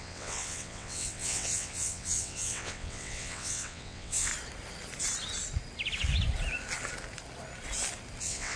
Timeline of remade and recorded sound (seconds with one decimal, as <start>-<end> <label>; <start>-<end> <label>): 0.0-4.3 remade; 4.3-8.2 recorded; 8.2-8.6 remade